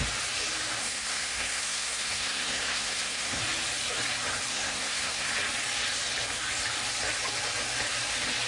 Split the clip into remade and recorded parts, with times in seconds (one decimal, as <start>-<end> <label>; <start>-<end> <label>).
0.0-0.8 recorded; 0.8-3.4 remade; 3.4-4.5 recorded; 4.5-5.3 remade; 5.3-8.5 recorded